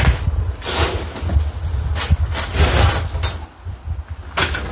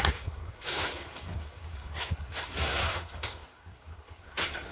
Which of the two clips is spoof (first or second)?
second